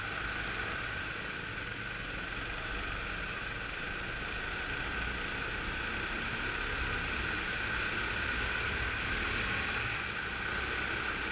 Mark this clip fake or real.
real